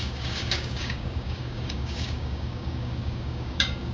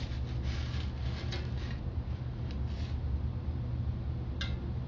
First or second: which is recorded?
second